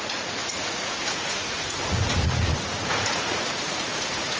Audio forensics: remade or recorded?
remade